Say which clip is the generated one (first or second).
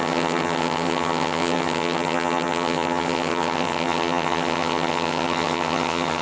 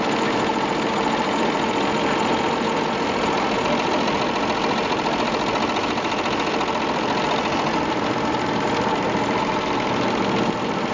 first